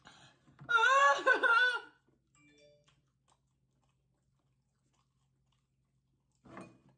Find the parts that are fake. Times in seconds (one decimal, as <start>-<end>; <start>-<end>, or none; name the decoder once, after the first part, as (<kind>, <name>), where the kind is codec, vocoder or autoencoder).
none